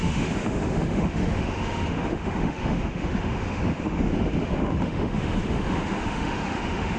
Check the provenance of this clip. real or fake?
fake